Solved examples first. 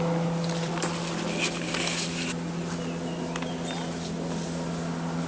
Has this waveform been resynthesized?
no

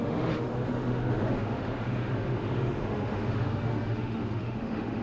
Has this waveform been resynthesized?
yes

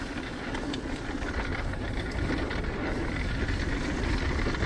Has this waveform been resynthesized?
no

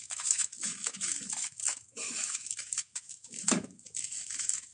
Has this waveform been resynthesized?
yes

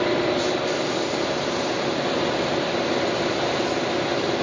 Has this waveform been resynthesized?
no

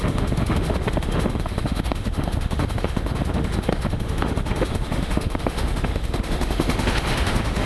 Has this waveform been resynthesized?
yes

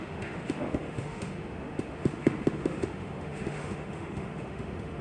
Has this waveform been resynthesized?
yes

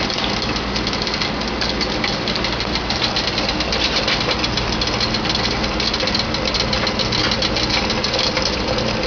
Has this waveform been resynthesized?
no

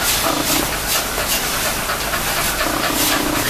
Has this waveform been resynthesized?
no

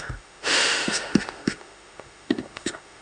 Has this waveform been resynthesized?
yes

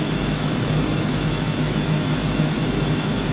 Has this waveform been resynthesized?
yes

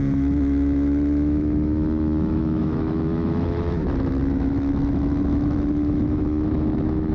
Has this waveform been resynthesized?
yes